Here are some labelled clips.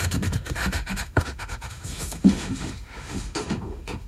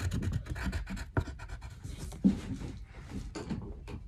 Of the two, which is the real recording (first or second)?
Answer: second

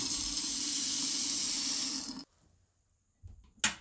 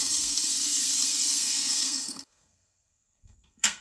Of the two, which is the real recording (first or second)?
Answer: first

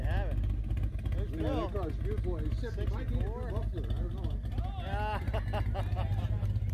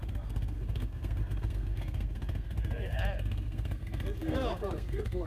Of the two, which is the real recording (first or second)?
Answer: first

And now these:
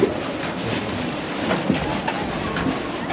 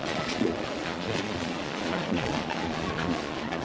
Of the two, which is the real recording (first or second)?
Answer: first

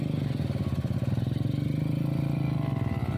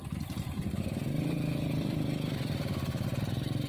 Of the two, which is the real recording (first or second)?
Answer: first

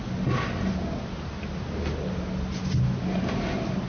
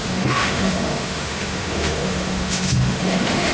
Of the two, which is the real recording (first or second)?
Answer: first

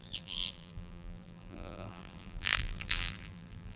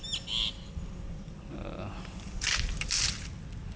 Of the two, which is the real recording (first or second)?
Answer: second